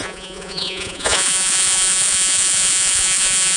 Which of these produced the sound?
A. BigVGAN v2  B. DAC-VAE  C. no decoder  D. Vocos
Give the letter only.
D